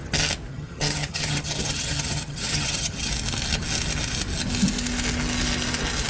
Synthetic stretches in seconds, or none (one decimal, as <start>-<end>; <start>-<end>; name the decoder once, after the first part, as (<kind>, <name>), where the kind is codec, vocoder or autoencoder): 0.5-3.1 (vocoder, HiFi-GAN)